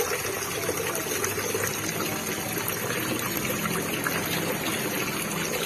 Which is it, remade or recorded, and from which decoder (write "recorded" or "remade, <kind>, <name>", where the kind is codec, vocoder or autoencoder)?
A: recorded